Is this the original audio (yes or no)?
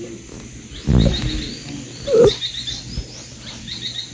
yes